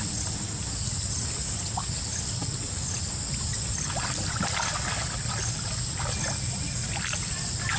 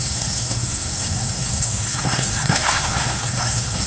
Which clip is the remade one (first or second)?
second